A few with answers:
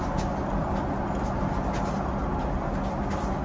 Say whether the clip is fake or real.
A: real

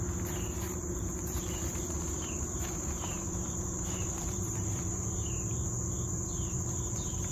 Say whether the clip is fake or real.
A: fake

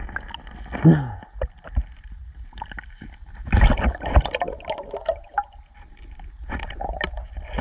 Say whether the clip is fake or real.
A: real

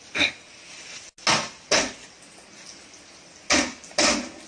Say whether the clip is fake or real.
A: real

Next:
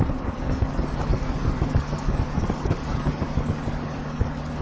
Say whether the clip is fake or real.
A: fake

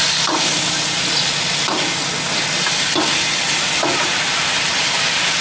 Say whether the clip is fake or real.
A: real